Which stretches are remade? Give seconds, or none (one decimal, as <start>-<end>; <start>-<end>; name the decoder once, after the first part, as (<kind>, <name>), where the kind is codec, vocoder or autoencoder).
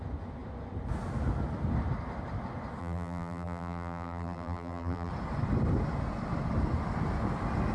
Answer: 2.8-5.1 (vocoder, BigVGAN v2)